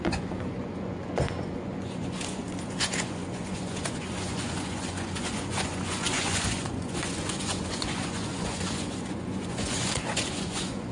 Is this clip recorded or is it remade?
remade